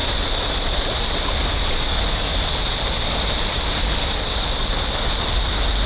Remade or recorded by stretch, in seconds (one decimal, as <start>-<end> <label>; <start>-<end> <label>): 0.0-1.7 recorded; 1.7-2.3 remade; 2.3-5.9 recorded